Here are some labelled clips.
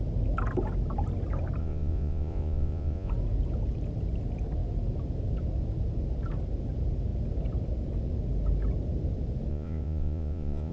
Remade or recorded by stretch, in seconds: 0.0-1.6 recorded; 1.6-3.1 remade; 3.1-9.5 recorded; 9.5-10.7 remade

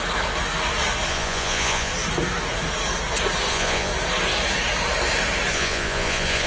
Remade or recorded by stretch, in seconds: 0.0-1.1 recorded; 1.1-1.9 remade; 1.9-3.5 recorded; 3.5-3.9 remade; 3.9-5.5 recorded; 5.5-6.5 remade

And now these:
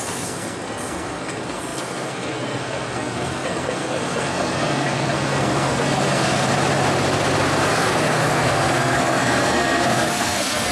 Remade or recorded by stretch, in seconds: 0.0-6.5 remade; 6.5-7.7 recorded; 7.7-10.7 remade

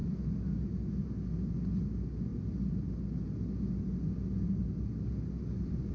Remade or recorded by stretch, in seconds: 0.0-5.9 recorded

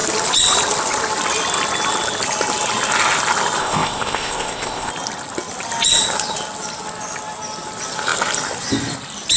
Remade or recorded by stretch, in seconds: 0.0-3.6 recorded; 3.6-4.9 remade; 4.9-9.4 recorded